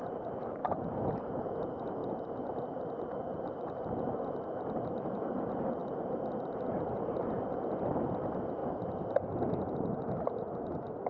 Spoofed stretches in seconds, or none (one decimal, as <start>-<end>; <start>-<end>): 0.0-0.6; 1.2-2.0; 2.6-11.1